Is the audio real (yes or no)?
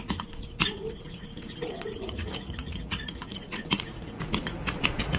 no